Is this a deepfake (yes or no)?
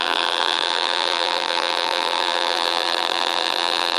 yes